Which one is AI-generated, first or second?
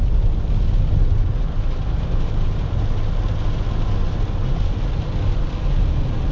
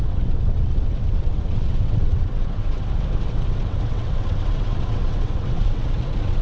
second